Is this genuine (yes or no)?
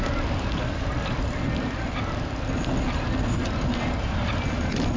yes